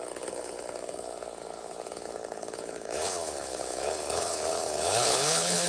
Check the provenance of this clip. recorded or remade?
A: remade